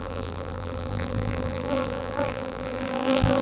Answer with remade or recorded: remade